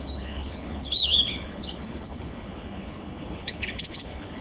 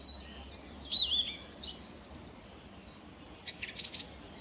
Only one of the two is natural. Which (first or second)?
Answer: second